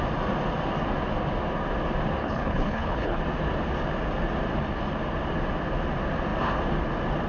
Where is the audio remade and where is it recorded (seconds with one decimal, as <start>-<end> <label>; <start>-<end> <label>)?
0.0-2.2 recorded; 2.2-3.2 remade; 3.2-7.3 recorded